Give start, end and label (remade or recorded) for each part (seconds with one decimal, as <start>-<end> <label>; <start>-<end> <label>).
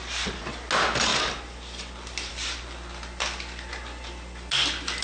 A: 0.0-5.0 recorded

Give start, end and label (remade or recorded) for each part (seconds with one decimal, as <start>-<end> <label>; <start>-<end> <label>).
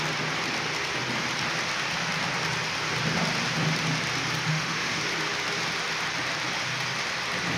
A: 0.0-4.5 recorded; 4.5-5.0 remade; 5.0-7.6 recorded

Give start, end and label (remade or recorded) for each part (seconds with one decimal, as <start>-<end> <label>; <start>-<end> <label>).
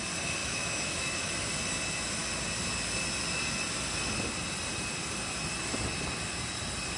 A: 0.0-0.4 recorded; 0.4-1.3 remade; 1.3-7.0 recorded